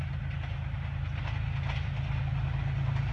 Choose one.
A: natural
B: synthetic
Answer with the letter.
A